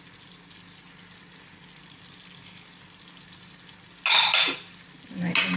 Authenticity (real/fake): real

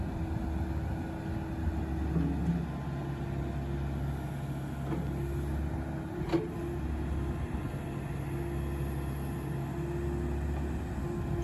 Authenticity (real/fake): real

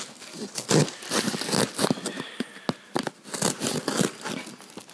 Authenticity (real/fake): real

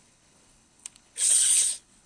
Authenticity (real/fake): fake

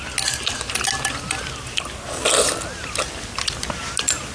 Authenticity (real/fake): real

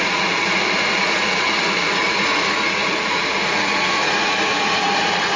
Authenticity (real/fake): fake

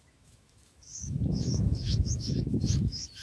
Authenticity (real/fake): fake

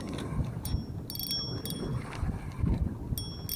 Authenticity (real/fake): real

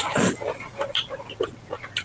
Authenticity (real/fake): real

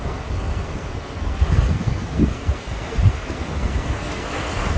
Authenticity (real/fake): fake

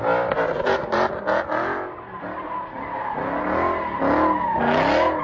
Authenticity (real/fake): real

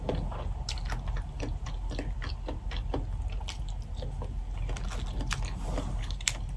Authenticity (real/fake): real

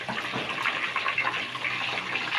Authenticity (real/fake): real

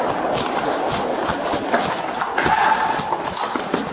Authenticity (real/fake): real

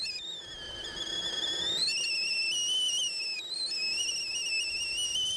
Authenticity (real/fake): real